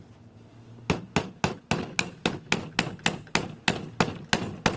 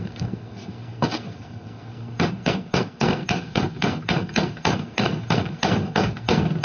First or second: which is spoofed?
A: second